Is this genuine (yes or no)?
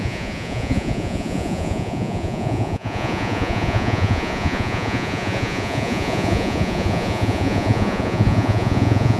no